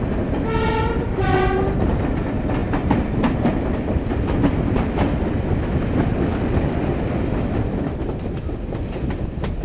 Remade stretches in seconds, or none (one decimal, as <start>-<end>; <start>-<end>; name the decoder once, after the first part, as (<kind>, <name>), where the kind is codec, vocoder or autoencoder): 2.6-4.4 (vocoder, BigVGAN v2)